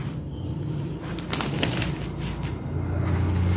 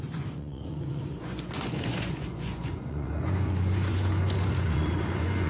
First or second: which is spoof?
second